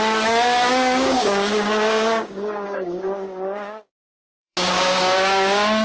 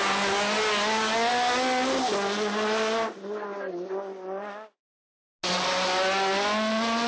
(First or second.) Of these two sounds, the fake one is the first